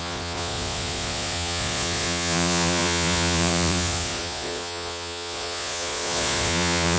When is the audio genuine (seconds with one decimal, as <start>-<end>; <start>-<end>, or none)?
none